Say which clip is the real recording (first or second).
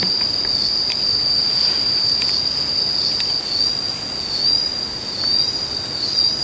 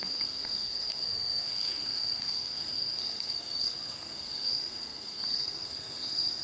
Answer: first